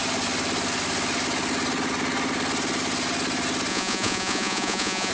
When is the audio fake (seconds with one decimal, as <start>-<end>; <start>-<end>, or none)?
3.7-5.1